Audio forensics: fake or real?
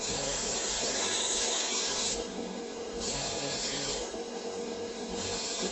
fake